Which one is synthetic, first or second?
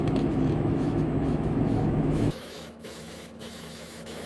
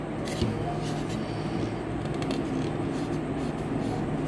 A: first